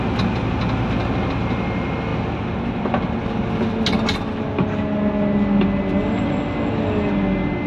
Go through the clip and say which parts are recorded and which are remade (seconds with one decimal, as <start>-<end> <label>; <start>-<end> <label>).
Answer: 0.0-7.7 recorded